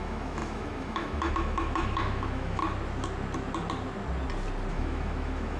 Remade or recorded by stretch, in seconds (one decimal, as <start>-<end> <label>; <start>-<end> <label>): 0.0-2.6 remade; 2.6-4.7 recorded; 4.7-5.6 remade

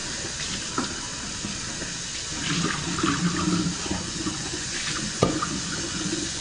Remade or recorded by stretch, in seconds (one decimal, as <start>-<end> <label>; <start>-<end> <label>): 0.0-3.8 recorded; 3.8-6.4 remade

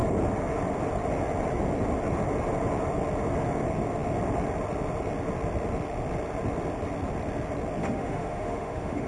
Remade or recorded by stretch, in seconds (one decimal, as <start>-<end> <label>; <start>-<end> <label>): 0.0-7.8 recorded; 7.8-9.1 remade

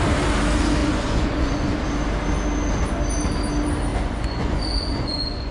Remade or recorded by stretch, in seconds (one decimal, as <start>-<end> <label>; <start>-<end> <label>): 0.0-0.8 recorded; 0.8-1.7 remade; 1.7-3.9 recorded; 3.9-5.5 remade